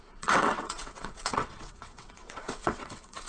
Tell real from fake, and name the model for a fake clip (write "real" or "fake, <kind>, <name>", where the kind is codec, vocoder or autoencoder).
fake, vocoder, WaveNeXt